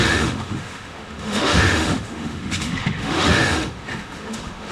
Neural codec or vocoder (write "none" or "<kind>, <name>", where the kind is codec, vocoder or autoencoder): autoencoder, DAC-VAE